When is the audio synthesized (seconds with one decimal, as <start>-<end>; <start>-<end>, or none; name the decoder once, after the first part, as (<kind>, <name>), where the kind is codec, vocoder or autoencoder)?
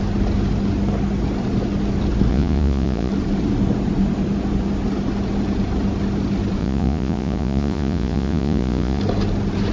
2.3-3.1 (vocoder, Vocos); 6.6-9.0